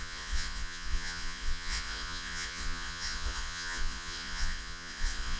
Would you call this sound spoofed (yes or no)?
yes